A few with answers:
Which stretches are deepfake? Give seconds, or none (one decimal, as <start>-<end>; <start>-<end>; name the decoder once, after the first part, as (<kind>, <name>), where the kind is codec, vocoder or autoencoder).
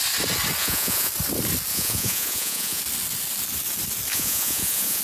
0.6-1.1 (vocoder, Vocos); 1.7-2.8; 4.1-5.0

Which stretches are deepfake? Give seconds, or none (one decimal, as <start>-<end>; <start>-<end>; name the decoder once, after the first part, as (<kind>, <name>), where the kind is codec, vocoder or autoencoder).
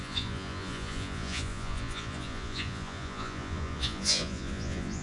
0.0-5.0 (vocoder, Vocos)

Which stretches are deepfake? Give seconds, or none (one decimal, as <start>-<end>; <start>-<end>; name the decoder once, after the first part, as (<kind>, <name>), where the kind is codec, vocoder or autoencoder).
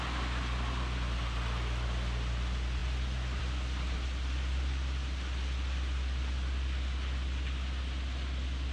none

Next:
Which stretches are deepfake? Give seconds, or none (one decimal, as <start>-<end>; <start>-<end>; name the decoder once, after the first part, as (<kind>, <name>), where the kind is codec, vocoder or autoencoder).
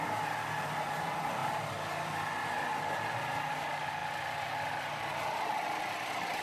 none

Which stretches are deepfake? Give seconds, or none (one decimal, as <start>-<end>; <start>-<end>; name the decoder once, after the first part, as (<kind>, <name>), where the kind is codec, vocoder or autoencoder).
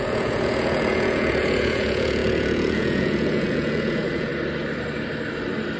0.0-4.3 (vocoder, Vocos)